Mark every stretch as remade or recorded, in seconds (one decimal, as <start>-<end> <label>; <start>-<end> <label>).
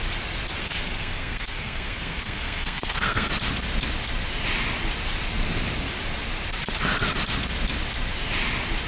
0.0-0.6 recorded; 0.6-3.3 remade; 3.3-8.9 recorded